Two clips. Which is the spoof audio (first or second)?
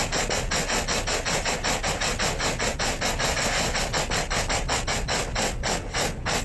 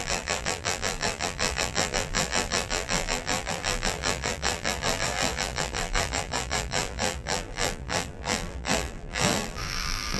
second